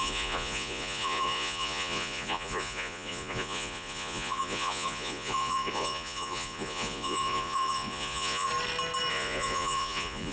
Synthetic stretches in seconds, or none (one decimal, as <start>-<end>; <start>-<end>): 0.0-8.5; 9.1-10.3